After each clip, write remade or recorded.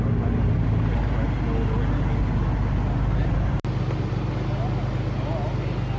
recorded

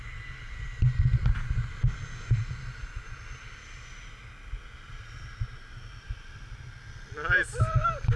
recorded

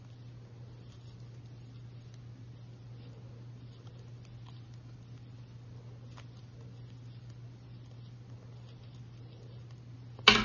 recorded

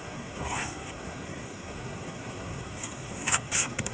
remade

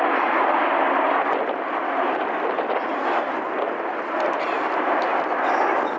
recorded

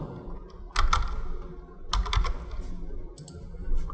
recorded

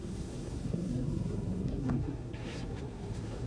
remade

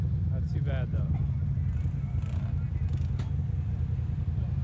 recorded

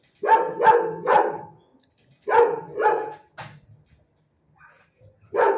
recorded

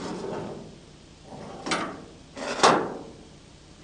recorded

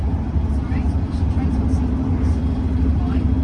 recorded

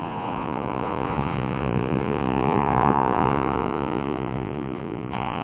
remade